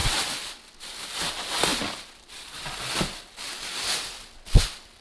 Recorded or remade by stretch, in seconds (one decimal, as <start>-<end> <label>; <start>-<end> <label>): 0.0-5.0 recorded